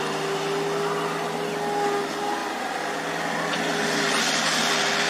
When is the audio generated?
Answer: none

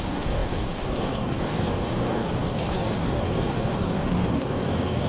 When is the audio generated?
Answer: 0.0-5.1 (codec, DAC)

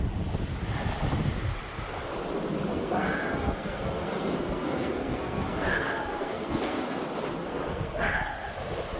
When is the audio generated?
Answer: 2.7-7.0 (codec, SNAC); 7.4-8.2

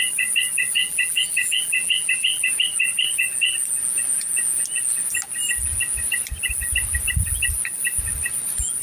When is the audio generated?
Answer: 0.8-2.5 (vocoder, BigVGAN v2)